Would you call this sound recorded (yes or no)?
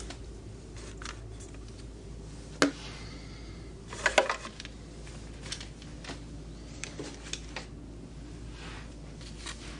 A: yes